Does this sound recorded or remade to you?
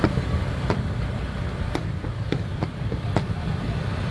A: recorded